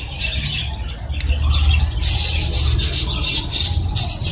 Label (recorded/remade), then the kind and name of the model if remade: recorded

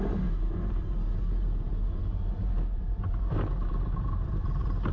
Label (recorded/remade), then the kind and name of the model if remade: recorded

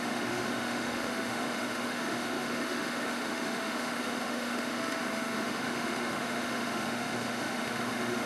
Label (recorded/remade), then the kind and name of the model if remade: remade, autoencoder, DAC-VAE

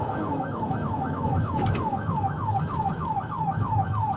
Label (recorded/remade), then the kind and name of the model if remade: remade, autoencoder, DAC-VAE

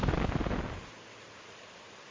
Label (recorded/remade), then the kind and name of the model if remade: recorded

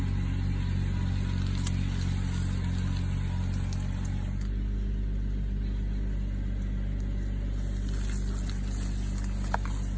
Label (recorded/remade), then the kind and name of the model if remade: recorded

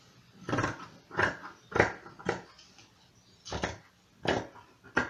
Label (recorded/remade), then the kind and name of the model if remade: recorded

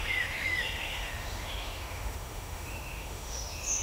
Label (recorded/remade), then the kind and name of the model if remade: remade, autoencoder, DAC-VAE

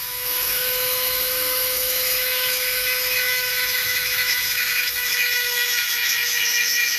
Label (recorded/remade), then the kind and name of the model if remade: remade, autoencoder, DAC-VAE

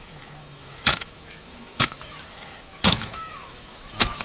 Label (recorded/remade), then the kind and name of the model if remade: remade, autoencoder, DAC-VAE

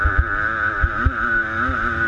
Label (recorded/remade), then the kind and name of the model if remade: recorded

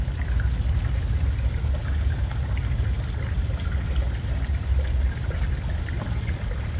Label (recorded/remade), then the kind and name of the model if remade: recorded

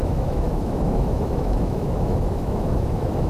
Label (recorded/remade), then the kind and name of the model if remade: remade, autoencoder, DAC-VAE